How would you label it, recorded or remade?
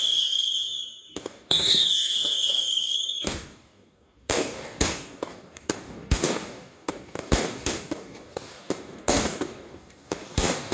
remade